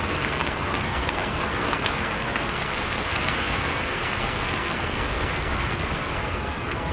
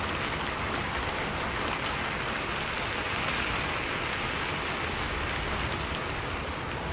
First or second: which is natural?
second